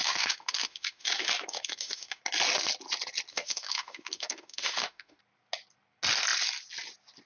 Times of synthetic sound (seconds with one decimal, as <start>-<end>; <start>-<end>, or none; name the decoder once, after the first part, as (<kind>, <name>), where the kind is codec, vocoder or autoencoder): 0.0-2.2 (autoencoder, DAC-VAE); 3.3-5.2